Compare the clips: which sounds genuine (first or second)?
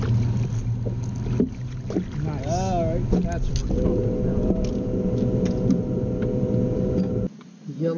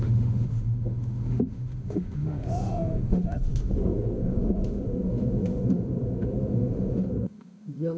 first